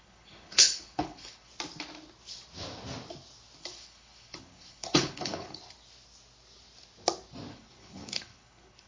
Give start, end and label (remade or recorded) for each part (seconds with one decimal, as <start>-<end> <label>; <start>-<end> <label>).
0.0-1.5 remade; 1.5-3.6 recorded; 3.6-5.6 remade; 5.6-7.5 recorded; 7.5-8.9 remade